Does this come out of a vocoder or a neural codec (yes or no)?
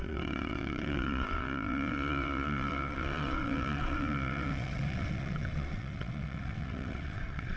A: yes